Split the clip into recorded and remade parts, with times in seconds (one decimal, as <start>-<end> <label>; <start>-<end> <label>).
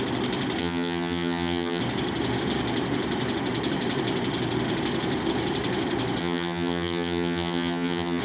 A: 0.0-0.6 recorded; 0.6-1.8 remade; 1.8-6.2 recorded; 6.2-8.2 remade